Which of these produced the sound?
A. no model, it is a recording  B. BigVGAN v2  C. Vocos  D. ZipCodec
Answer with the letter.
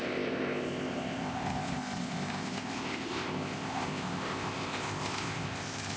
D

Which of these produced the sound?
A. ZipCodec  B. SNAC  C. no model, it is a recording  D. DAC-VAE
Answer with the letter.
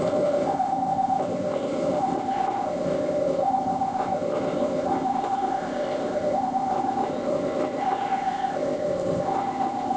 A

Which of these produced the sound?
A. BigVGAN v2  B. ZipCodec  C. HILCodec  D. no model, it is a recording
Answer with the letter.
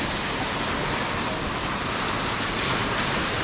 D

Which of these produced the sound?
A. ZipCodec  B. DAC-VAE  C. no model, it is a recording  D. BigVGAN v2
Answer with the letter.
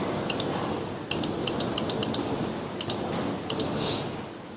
C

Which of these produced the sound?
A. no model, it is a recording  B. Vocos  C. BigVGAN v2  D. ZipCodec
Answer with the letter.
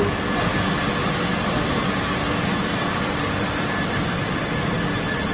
A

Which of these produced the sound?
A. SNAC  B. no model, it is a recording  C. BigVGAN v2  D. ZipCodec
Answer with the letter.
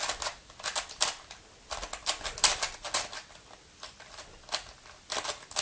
B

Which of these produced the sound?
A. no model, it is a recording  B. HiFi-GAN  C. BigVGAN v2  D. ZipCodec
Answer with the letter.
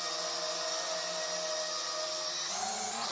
A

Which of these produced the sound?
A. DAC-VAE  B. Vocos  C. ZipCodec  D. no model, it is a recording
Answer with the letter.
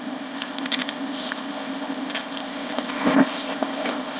C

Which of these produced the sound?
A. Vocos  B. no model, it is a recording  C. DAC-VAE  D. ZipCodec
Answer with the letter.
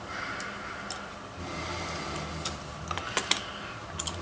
B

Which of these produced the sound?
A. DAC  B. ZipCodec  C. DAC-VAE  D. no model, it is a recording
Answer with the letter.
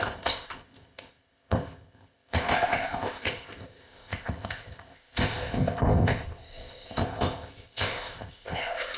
B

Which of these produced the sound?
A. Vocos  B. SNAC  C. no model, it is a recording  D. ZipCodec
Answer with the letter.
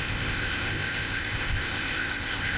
D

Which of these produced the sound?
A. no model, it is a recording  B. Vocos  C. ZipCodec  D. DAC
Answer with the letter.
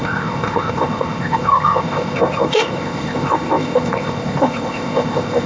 C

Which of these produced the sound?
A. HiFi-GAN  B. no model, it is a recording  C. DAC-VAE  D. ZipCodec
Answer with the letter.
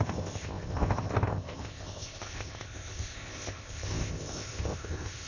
D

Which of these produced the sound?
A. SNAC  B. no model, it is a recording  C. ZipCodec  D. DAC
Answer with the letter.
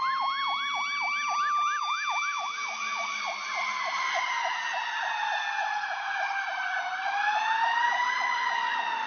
B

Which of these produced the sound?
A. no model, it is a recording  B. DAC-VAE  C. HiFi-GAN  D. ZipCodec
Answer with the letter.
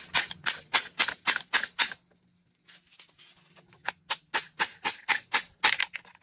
A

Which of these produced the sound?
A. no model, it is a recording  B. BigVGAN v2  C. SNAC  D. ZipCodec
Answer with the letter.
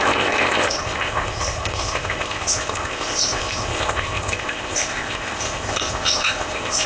D